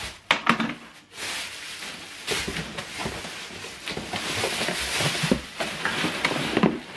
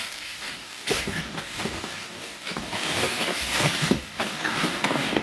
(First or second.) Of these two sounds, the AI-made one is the second